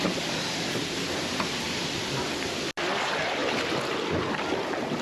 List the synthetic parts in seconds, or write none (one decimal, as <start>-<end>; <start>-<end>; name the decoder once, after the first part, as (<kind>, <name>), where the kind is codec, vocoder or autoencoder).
none